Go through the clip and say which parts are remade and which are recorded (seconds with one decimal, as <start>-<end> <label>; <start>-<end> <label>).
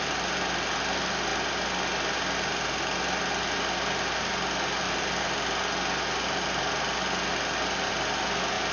0.0-8.7 recorded